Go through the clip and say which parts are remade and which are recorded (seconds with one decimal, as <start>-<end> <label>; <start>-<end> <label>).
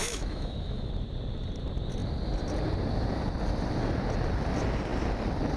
0.0-0.9 remade; 0.9-5.6 recorded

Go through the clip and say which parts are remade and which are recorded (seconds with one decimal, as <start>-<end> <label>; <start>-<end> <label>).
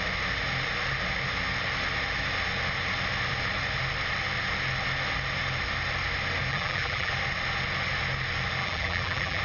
0.0-6.5 recorded; 6.5-7.1 remade; 7.1-8.6 recorded; 8.6-9.4 remade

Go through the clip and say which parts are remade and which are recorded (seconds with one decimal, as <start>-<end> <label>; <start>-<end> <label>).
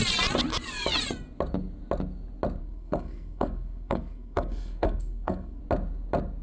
0.0-2.6 recorded; 2.6-5.6 remade; 5.6-6.4 recorded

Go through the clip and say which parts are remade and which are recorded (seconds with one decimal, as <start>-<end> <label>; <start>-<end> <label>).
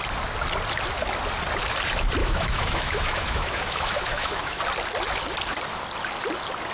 0.0-2.2 recorded; 2.2-4.6 remade; 4.6-6.7 recorded